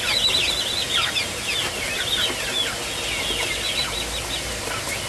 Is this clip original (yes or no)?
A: yes